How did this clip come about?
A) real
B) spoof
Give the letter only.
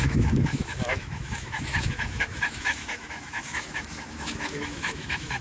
B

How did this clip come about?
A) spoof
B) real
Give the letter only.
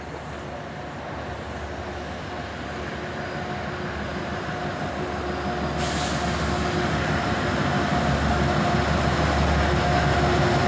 B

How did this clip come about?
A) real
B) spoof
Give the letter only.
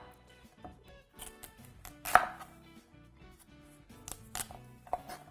A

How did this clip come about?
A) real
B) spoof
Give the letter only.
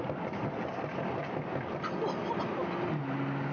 A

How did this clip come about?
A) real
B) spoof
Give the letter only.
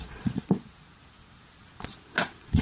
B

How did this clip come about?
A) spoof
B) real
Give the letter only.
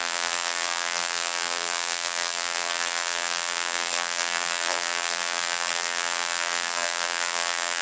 A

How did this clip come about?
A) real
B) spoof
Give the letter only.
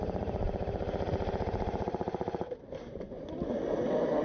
A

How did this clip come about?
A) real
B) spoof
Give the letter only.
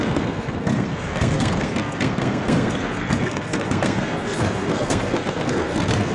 B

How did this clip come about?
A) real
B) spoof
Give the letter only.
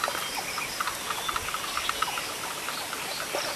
A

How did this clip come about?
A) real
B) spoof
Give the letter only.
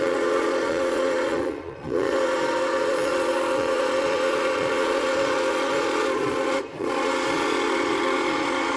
B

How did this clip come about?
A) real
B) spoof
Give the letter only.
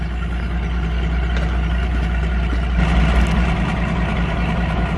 A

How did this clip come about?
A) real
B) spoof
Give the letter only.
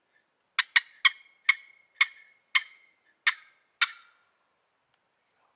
A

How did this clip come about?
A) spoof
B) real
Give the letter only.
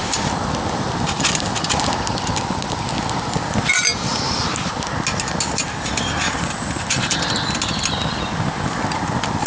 B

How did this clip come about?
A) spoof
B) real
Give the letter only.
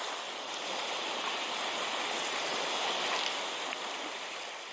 B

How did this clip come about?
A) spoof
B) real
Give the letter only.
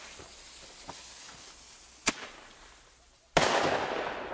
B